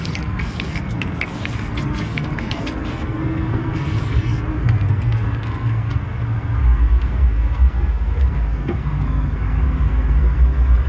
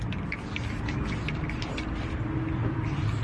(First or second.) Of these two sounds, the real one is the second